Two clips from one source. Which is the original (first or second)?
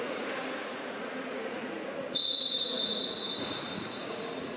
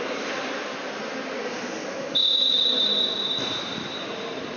second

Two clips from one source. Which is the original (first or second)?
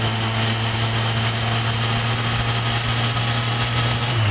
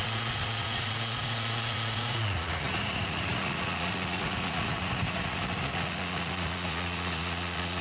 first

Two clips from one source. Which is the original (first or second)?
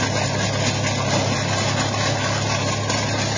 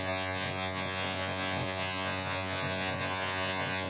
first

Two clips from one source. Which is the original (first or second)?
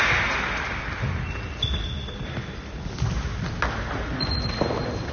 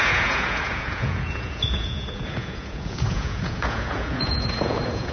first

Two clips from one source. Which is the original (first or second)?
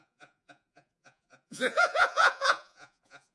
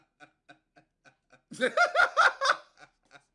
second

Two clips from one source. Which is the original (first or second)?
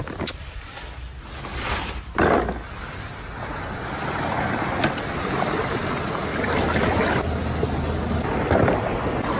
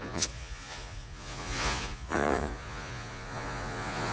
first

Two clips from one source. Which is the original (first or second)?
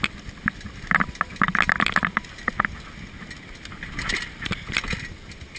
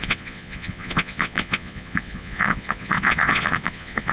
first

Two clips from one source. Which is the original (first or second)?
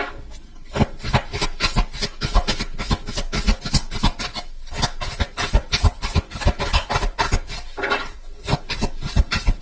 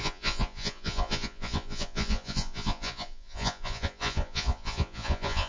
first